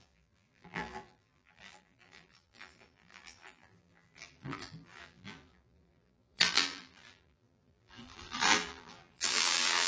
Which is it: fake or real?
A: fake